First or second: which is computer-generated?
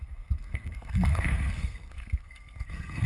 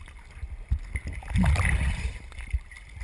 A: first